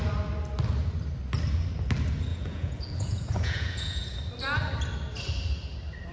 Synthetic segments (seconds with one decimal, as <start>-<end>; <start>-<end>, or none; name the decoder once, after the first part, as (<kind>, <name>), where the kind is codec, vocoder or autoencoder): 2.3-4.2 (vocoder, Vocos)